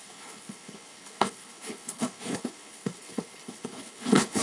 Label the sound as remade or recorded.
remade